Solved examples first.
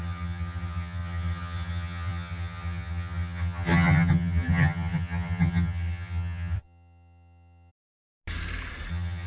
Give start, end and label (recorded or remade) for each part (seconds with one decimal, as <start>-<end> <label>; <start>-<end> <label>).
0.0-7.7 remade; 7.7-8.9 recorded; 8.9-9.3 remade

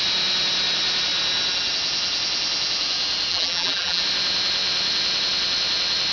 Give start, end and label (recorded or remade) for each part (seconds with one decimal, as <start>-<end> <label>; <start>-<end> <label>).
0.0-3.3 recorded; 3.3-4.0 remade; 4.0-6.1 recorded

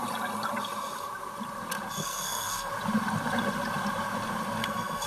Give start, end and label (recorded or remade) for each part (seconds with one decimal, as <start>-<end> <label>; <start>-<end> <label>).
0.0-2.0 recorded; 2.0-2.7 remade; 2.7-4.6 recorded; 4.6-5.1 remade